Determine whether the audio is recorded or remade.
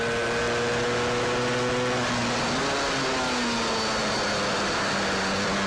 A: recorded